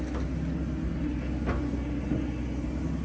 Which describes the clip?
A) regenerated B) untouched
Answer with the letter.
B